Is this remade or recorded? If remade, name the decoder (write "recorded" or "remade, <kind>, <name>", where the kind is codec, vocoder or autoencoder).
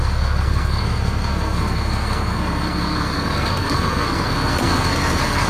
remade, codec, SNAC